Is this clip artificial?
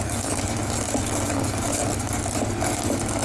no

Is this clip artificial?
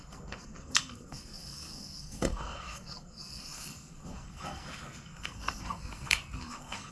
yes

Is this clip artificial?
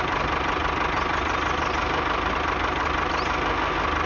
no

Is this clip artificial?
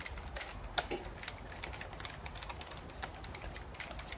no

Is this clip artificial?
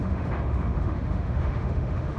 yes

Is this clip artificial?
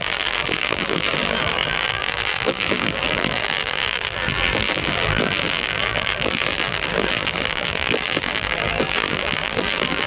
yes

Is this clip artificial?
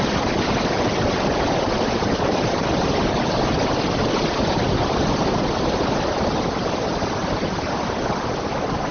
no